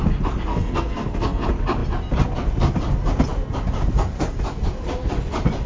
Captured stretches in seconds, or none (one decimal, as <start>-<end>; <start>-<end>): 0.0-0.5; 1.4-5.7